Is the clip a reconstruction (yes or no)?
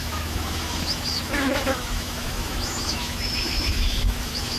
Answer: yes